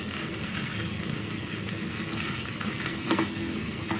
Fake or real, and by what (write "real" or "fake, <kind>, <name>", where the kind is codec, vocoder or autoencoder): fake, codec, SNAC